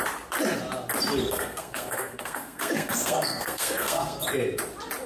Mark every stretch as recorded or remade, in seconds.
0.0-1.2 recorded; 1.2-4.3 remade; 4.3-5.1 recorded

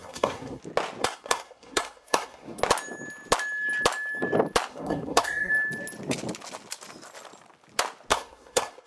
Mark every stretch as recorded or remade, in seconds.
0.0-0.6 remade; 0.6-1.0 recorded; 1.0-2.6 remade; 2.6-4.7 recorded; 4.7-5.5 remade; 5.5-8.1 recorded; 8.1-8.9 remade

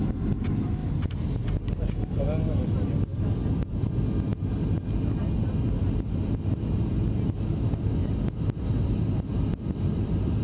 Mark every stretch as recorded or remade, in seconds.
0.0-3.1 recorded; 3.1-3.9 remade; 3.9-10.4 recorded

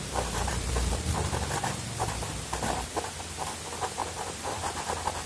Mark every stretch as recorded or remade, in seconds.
0.0-0.7 remade; 0.7-4.0 recorded; 4.0-4.6 remade; 4.6-5.3 recorded

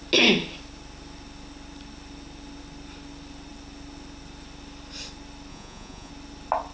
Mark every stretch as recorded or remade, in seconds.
0.0-5.5 recorded; 5.5-6.1 remade; 6.1-6.7 recorded

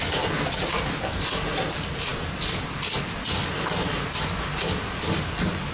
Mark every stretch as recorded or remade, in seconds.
0.0-5.7 recorded

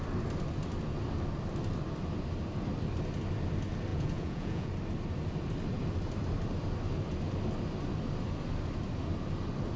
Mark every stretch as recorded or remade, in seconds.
0.0-3.9 recorded; 3.9-4.7 remade; 4.7-9.8 recorded

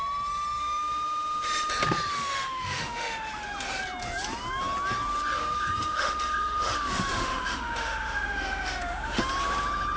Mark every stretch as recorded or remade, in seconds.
0.0-0.6 recorded; 0.6-1.7 remade; 1.7-2.1 recorded; 2.1-3.3 remade; 3.3-5.1 recorded; 5.1-9.2 remade; 9.2-10.0 recorded